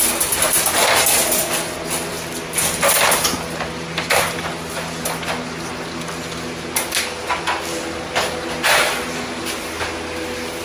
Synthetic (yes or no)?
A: no